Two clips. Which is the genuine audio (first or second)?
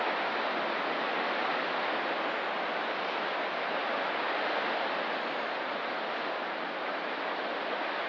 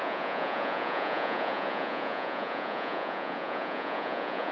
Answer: first